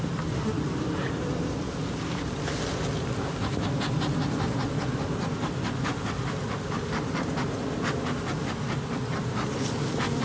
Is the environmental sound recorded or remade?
recorded